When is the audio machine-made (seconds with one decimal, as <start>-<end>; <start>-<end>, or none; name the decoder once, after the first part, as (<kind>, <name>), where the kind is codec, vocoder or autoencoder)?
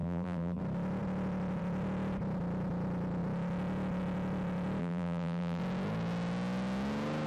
0.0-0.6 (vocoder, BigVGAN v2); 4.8-5.6